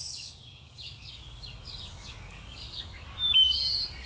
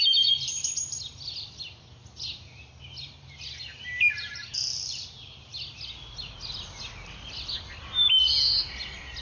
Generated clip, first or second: first